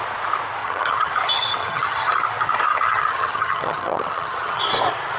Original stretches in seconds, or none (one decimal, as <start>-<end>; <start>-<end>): 0.0-0.6; 1.1-1.6; 2.1-2.7; 4.6-5.2